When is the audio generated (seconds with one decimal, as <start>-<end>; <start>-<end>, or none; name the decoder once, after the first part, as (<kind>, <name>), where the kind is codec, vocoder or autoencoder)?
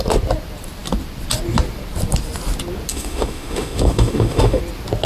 2.9-4.6 (autoencoder, DAC-VAE)